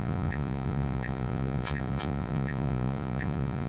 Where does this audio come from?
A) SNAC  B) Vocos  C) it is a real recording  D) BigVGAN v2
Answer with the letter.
B